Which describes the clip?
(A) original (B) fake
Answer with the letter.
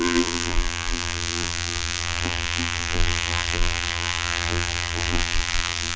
B